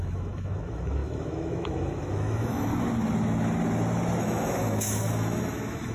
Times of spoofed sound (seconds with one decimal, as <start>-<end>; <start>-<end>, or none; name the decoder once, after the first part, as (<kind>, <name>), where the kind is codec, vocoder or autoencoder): 0.0-2.7 (autoencoder, DAC-VAE); 4.2-5.9